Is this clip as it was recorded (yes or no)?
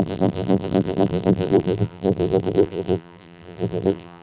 no